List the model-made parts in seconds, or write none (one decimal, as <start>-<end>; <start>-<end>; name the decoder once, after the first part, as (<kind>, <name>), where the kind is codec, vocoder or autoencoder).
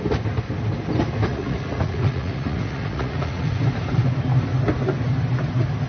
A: 1.3-3.6 (vocoder, Vocos)